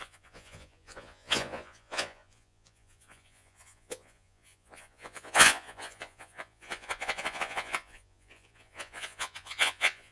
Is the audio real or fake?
fake